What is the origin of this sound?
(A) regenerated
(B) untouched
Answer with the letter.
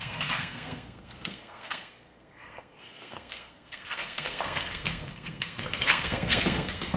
A